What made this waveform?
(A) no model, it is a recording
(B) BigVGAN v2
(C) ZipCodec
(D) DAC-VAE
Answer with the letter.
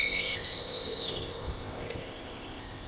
C